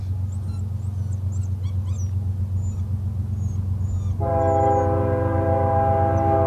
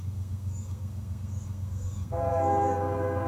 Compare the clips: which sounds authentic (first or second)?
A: first